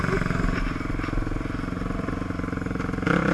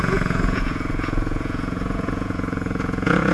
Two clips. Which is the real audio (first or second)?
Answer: first